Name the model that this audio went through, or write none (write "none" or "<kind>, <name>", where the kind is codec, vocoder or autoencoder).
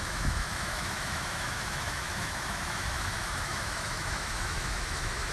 autoencoder, DAC-VAE